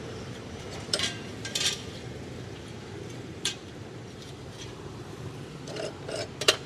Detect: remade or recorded remade